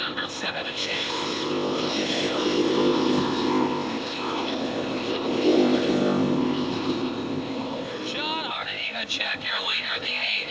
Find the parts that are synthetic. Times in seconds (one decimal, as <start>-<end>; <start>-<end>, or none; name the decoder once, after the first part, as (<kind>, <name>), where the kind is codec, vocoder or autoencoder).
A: 0.0-7.9 (codec, ZipCodec); 8.5-10.5